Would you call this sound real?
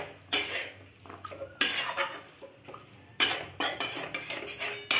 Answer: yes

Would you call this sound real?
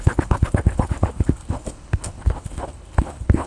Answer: no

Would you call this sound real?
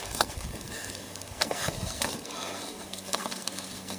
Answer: no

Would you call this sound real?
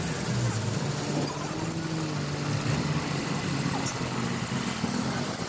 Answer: yes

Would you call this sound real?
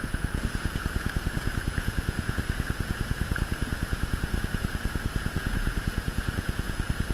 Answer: no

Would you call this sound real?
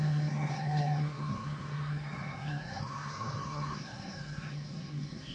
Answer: no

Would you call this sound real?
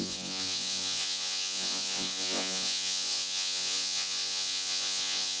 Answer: no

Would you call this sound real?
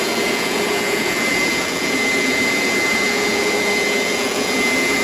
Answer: no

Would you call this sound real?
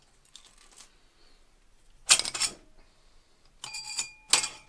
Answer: yes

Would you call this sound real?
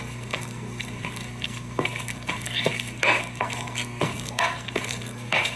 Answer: no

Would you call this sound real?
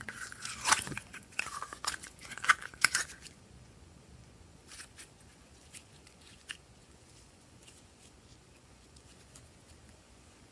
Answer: no